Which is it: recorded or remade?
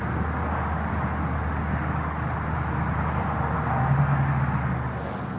recorded